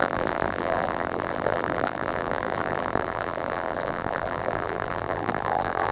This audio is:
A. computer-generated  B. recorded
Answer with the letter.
A